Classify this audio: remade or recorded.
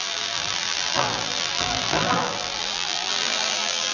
remade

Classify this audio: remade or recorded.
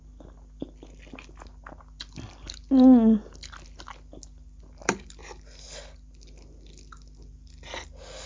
recorded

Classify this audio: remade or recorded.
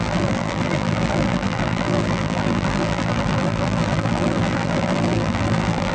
remade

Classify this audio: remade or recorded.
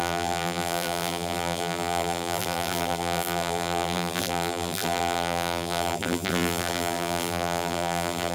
remade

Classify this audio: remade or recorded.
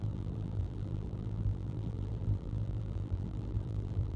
remade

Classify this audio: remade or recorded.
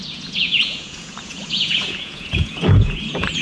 remade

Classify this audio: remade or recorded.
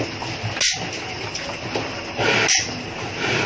recorded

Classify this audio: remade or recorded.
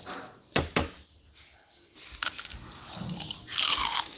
recorded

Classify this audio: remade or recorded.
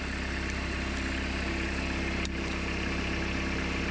recorded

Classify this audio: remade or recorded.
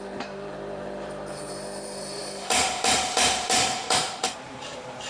remade